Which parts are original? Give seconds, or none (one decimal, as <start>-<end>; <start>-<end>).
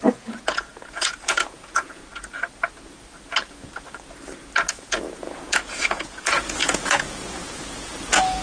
2.0-4.7